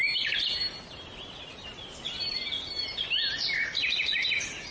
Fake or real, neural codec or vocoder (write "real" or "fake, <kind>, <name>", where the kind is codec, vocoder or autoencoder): real